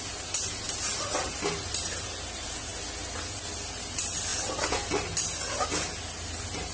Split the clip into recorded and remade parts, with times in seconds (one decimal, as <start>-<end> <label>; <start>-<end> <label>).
0.0-6.7 recorded